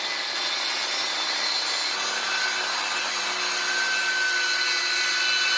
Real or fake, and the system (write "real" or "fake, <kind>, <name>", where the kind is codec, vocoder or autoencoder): real